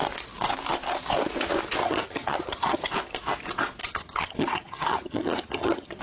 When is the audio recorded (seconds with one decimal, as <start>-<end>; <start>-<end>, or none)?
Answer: 0.0-1.8; 2.9-3.8